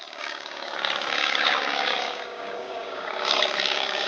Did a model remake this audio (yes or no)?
yes